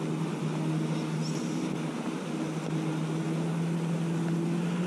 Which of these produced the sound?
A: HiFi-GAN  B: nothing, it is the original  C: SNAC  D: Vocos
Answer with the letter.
B